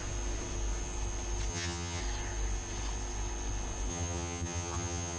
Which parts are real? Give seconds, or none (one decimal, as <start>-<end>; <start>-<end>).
0.0-1.5; 2.0-3.9